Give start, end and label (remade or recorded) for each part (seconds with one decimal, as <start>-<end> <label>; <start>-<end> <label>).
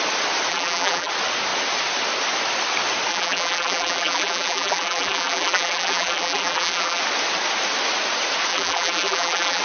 0.0-0.5 recorded; 0.5-1.1 remade; 1.1-3.1 recorded; 3.1-7.0 remade; 7.0-8.5 recorded; 8.5-9.6 remade